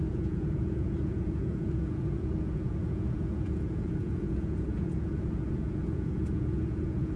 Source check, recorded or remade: remade